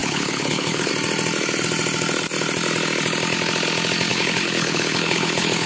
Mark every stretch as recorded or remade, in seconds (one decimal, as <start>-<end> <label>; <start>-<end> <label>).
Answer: 0.0-0.9 remade; 0.9-4.1 recorded; 4.1-5.7 remade